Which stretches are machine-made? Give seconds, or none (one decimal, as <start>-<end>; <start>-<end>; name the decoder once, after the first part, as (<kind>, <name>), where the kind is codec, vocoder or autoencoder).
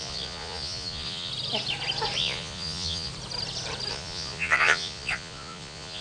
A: 0.0-1.3 (vocoder, Vocos); 2.2-3.1; 3.9-6.0